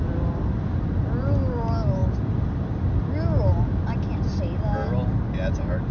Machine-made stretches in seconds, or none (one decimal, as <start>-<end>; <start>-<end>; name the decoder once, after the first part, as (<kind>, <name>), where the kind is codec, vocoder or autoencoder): none